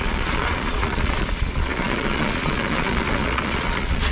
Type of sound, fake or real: fake